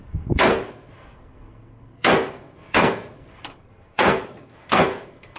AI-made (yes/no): yes